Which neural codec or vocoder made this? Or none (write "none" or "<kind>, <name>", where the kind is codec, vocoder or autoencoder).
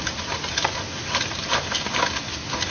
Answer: none